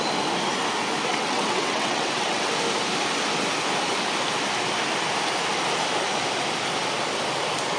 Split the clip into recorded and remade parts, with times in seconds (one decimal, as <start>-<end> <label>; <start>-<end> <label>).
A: 0.0-1.1 recorded; 1.1-2.5 remade; 2.5-7.8 recorded